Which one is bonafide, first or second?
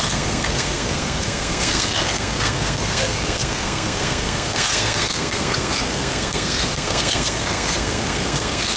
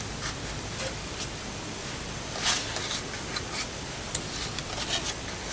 second